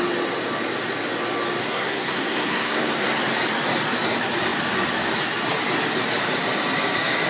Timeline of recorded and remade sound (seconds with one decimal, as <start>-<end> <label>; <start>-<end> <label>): 0.0-1.6 recorded; 1.6-3.2 remade; 3.2-7.3 recorded